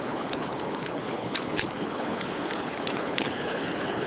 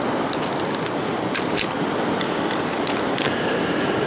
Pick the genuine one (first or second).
second